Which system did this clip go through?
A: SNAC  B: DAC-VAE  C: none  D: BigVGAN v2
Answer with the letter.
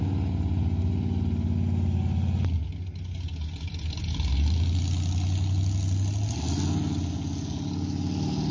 C